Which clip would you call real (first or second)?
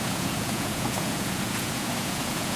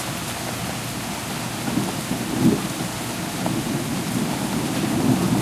second